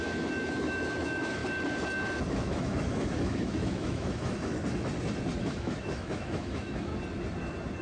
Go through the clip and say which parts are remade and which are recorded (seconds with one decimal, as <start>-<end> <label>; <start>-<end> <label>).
0.0-1.4 remade; 1.4-2.3 recorded; 2.3-4.5 remade; 4.5-5.4 recorded; 5.4-6.9 remade; 6.9-7.8 recorded